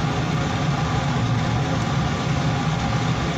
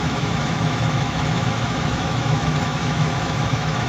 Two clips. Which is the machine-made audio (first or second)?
second